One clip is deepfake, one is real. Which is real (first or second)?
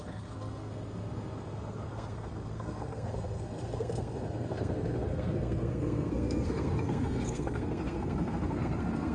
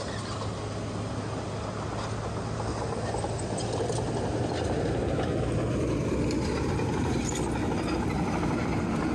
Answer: second